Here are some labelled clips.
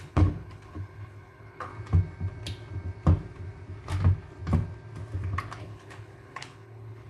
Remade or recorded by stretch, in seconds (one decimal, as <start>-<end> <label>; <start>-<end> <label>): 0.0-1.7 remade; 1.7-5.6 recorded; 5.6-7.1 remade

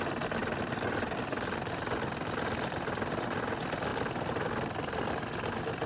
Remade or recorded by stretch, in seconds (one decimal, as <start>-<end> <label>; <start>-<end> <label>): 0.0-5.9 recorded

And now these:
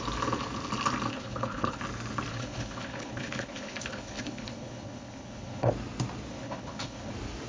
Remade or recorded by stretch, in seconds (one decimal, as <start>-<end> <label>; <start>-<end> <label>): 0.0-1.1 recorded; 1.1-1.8 remade; 1.8-2.3 recorded; 2.3-5.7 remade; 5.7-6.3 recorded; 6.3-7.1 remade; 7.1-7.5 recorded

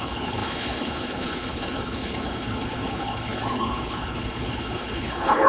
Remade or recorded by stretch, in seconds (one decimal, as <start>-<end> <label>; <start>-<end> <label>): 0.0-5.5 remade